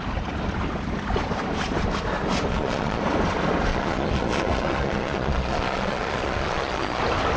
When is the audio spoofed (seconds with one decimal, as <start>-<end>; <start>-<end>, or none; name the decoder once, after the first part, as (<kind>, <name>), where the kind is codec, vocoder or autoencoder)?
2.5-3.0 (vocoder, Vocos); 3.7-7.0